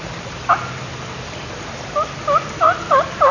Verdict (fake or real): real